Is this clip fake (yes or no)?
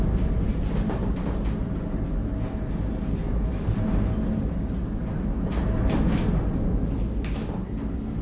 no